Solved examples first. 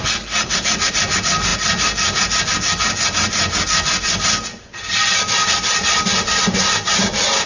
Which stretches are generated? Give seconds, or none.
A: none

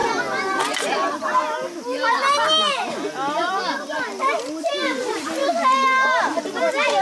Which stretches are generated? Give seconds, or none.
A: none

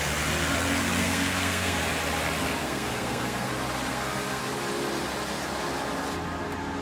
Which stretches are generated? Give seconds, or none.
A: 1.0-1.8 (codec, SNAC); 2.6-3.5; 3.9-4.4

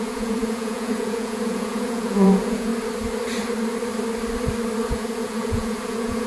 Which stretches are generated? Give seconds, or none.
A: 0.0-2.7 (vocoder, Vocos); 4.9-6.3